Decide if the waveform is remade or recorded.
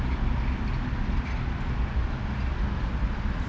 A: recorded